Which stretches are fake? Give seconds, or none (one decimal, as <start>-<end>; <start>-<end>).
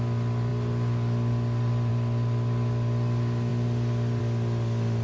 3.5-4.2